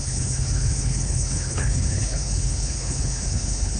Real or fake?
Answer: fake